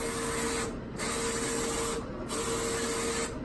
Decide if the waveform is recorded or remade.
recorded